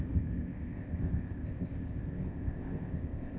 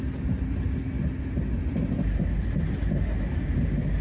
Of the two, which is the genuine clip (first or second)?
second